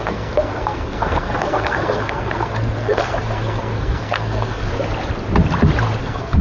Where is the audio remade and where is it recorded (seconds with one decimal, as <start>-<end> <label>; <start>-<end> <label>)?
0.0-4.7 remade; 4.7-6.0 recorded; 6.0-6.4 remade